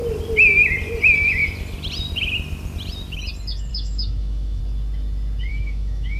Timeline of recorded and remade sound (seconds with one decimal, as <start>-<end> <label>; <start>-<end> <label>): 0.0-3.7 recorded; 3.7-4.6 remade; 4.6-5.5 recorded; 5.5-6.2 remade